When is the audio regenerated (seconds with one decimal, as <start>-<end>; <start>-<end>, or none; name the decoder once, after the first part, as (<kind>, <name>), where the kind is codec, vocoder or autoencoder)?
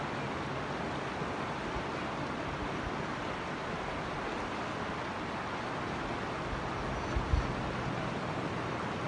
none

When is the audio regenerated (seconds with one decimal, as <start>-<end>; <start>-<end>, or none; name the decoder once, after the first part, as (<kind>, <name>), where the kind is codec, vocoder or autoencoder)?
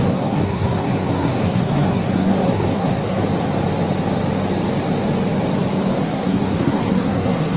0.0-3.2 (codec, SNAC); 6.0-7.6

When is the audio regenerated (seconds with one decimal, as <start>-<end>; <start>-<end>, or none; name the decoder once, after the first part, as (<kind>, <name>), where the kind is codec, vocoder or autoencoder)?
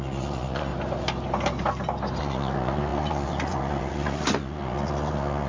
0.0-0.7 (vocoder, Vocos); 2.2-5.5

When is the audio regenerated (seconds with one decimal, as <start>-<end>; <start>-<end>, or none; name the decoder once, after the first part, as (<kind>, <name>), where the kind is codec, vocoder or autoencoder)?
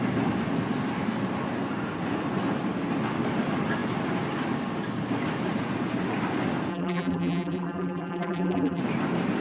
6.7-8.8 (vocoder, BigVGAN v2)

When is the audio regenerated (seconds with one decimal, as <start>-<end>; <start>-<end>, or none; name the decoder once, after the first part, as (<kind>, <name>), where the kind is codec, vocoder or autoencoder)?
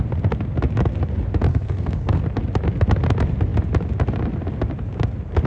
1.5-2.2 (codec, SNAC)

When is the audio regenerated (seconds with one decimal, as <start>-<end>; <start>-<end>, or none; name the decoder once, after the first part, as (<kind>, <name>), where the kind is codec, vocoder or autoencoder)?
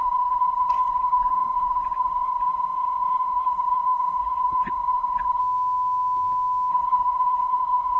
0.0-5.4 (codec, HILCodec); 6.7-8.0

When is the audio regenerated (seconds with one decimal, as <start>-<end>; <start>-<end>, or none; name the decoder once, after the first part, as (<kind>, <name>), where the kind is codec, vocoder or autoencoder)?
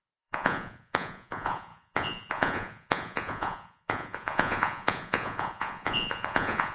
0.0-6.7 (vocoder, Vocos)